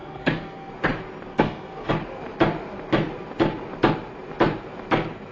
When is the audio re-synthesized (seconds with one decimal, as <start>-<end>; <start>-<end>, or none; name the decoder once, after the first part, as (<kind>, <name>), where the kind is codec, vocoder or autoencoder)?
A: 0.0-0.7 (codec, SNAC); 1.3-1.9